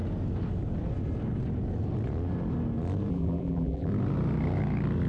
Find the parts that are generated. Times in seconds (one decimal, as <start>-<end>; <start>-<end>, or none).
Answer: 3.1-3.9